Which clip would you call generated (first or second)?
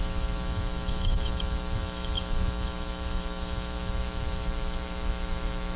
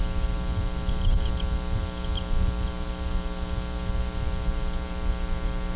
first